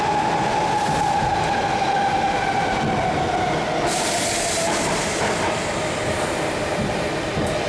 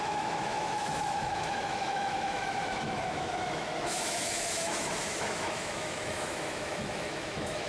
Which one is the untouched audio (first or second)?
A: first